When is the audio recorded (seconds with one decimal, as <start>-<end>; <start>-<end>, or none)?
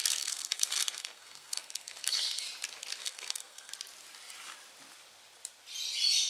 2.4-3.0; 3.7-6.3